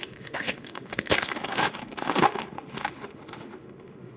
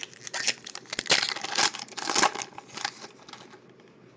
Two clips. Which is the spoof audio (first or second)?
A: first